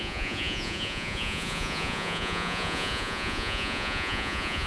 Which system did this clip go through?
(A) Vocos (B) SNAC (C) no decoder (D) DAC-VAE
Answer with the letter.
A